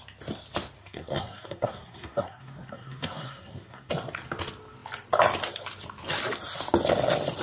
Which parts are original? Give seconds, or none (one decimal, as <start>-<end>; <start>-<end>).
0.0-0.8; 3.9-7.4